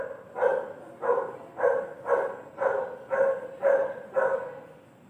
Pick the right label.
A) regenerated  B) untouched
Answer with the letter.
B